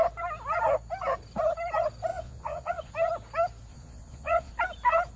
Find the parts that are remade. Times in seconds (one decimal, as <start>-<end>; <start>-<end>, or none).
2.1-2.9; 3.7-4.5